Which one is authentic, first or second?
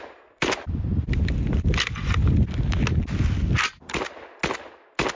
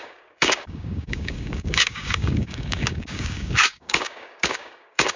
first